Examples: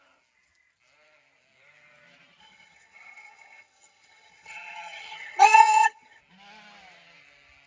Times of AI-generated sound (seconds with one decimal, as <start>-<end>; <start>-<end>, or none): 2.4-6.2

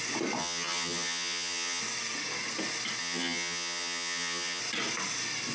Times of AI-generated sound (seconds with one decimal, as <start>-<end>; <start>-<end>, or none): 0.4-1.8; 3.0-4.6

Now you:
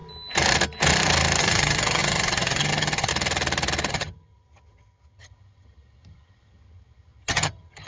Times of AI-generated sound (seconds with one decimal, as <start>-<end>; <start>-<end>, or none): 1.4-3.1; 3.9-7.9

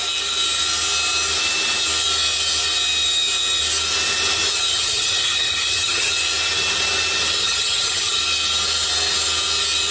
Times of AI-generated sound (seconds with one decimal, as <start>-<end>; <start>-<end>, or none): 4.7-6.1; 7.4-8.2

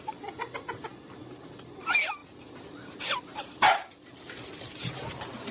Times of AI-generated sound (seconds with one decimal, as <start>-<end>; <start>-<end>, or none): none